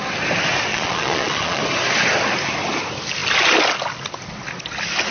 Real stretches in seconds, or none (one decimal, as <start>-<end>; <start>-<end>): 0.0-0.7; 1.6-5.1